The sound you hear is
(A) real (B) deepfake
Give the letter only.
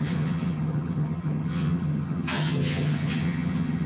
B